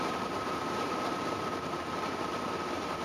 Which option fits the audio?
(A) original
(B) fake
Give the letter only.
B